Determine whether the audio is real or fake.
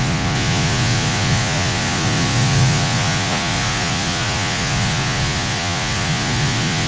fake